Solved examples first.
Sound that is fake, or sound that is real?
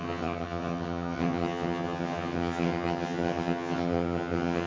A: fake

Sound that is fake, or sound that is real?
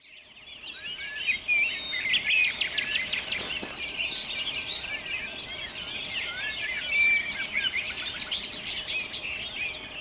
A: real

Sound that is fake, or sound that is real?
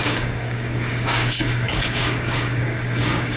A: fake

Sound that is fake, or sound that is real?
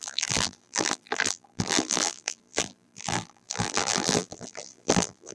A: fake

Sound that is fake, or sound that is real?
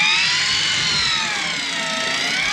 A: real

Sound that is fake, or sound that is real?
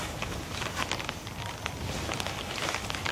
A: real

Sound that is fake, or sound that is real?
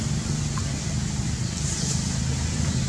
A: real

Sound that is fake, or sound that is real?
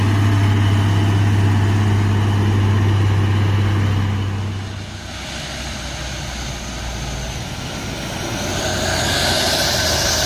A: real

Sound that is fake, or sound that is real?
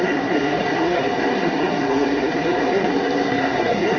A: fake